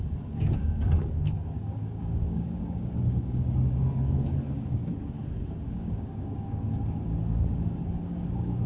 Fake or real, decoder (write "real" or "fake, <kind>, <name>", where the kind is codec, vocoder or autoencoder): fake, codec, DAC